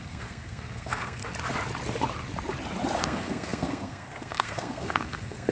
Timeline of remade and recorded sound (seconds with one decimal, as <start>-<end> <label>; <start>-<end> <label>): 0.0-1.2 remade; 1.2-3.0 recorded; 3.0-5.5 remade